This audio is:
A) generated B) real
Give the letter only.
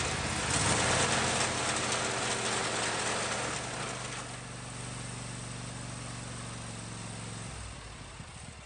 B